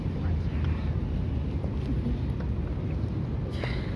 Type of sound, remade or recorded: recorded